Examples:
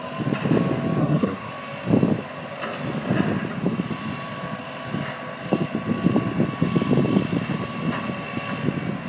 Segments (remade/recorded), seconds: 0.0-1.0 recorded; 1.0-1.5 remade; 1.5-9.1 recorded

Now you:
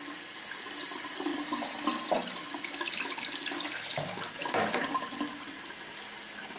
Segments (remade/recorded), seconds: 0.0-6.6 recorded

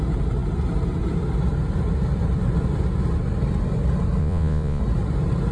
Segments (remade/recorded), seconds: 0.0-4.2 recorded; 4.2-4.8 remade; 4.8-5.5 recorded

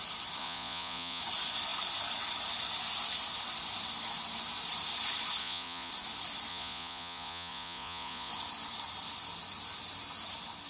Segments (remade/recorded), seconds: 0.0-0.4 recorded; 0.4-1.2 remade; 1.2-5.4 recorded; 5.4-5.9 remade; 5.9-6.5 recorded; 6.5-8.3 remade; 8.3-10.7 recorded

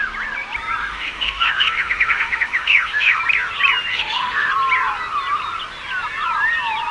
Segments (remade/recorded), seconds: 0.0-0.8 recorded; 0.8-3.2 remade; 3.2-3.9 recorded; 3.9-4.5 remade; 4.5-6.9 recorded

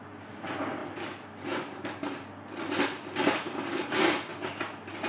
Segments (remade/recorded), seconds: 0.0-0.8 recorded; 0.8-3.9 remade; 3.9-4.3 recorded; 4.3-5.1 remade

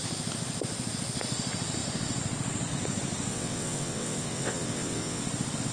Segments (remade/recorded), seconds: 0.0-3.3 recorded; 3.3-5.2 remade; 5.2-5.7 recorded

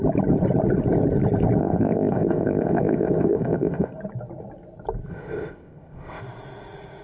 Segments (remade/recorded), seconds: 0.0-1.6 recorded; 1.6-3.9 remade; 3.9-5.1 recorded; 5.1-6.2 remade; 6.2-7.0 recorded